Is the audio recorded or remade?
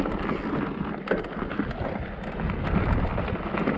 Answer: recorded